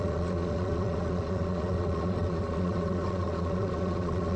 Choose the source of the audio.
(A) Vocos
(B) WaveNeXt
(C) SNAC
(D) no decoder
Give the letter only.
A